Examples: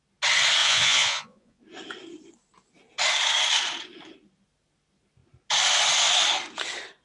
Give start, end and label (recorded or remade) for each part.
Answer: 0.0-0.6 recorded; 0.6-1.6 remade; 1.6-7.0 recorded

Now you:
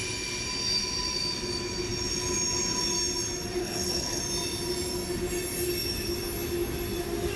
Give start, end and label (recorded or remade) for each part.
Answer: 0.0-3.6 recorded; 3.6-4.2 remade; 4.2-7.4 recorded